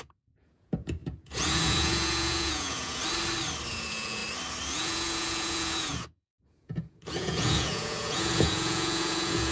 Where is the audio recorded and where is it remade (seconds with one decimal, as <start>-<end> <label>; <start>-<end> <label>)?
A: 0.0-3.0 remade; 3.0-3.7 recorded; 3.7-4.2 remade; 4.2-4.7 recorded; 4.7-9.5 remade